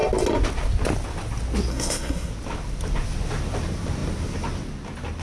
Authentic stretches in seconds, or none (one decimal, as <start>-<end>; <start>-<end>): 0.0-1.7; 2.3-5.2